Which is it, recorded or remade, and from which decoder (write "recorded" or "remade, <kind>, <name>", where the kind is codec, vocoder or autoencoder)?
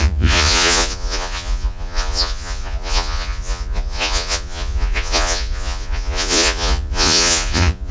remade, vocoder, Vocos